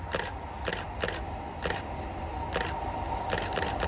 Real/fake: real